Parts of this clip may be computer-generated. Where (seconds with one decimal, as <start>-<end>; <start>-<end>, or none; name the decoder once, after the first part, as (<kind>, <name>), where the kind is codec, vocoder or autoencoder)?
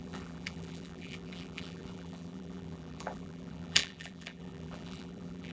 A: 0.0-5.5 (vocoder, BigVGAN v2)